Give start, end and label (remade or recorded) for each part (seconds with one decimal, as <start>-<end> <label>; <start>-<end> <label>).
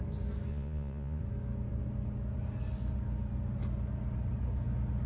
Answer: 0.0-0.5 recorded; 0.5-1.2 remade; 1.2-5.1 recorded